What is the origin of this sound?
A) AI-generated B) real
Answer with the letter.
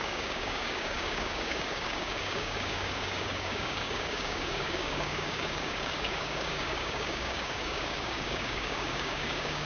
A